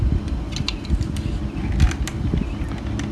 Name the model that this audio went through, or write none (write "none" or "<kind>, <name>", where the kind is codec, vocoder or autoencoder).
none